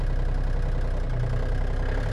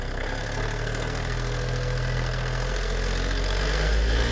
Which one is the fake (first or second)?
second